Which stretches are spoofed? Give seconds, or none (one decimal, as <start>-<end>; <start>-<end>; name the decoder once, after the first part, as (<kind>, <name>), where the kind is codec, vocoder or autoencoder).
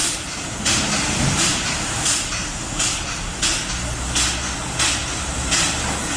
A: 0.0-3.7 (vocoder, BigVGAN v2); 5.0-5.5